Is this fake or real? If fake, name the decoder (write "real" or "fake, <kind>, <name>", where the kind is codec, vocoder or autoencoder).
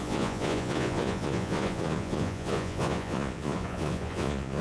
fake, vocoder, Vocos